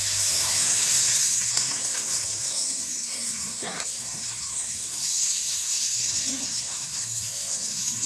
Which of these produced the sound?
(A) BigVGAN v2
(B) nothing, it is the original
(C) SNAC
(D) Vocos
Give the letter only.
C